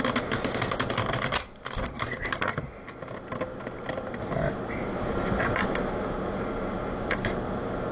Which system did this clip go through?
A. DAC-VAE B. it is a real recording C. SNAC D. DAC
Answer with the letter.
B